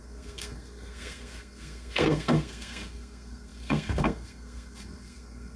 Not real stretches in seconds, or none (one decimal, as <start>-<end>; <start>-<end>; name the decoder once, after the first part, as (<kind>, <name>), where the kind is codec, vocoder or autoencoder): 0.0-5.6 (codec, SNAC)